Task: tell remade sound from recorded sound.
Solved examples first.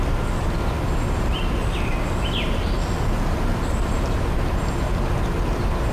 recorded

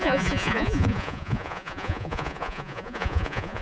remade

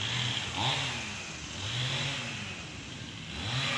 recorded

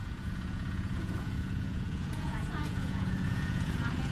remade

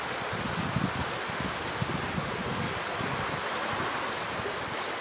recorded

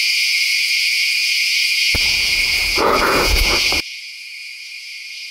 remade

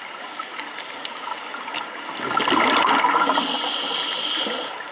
recorded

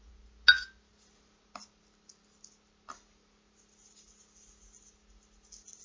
recorded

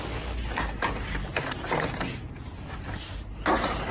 recorded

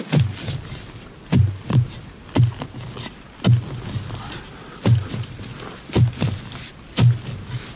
recorded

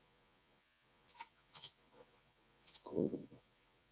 remade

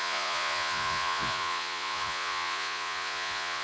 remade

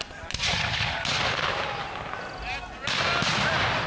recorded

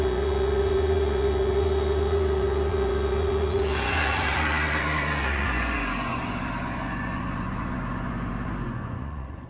remade